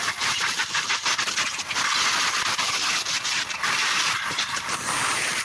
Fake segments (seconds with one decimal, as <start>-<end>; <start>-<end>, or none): 0.0-0.5; 3.7-5.4